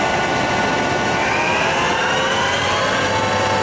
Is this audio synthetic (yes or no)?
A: no